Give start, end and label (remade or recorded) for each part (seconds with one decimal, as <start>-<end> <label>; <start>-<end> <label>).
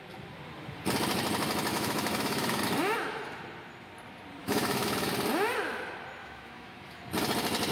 0.0-1.7 recorded; 1.7-2.6 remade; 2.6-4.4 recorded; 4.4-5.1 remade; 5.1-6.2 recorded; 6.2-7.0 remade; 7.0-7.7 recorded